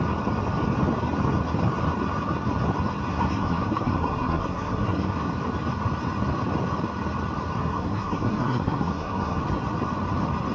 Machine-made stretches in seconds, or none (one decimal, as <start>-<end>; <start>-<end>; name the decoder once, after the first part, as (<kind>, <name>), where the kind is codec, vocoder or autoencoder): 3.1-5.3 (codec, SNAC); 7.5-9.4